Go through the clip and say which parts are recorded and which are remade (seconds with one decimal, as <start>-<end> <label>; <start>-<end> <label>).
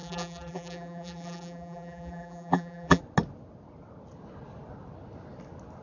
0.0-3.0 remade; 3.0-5.8 recorded